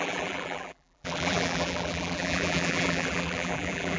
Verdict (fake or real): fake